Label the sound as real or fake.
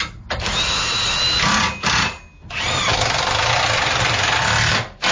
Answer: real